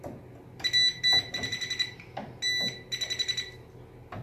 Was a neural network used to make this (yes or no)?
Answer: no